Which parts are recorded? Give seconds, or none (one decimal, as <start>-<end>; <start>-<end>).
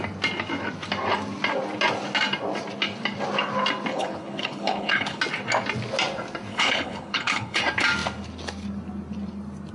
0.0-3.9; 5.2-6.5; 7.6-9.7